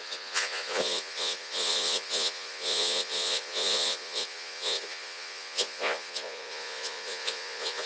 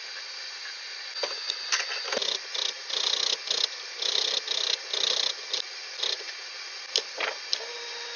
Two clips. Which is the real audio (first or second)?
second